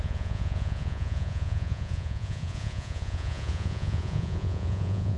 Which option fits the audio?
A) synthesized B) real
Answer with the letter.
A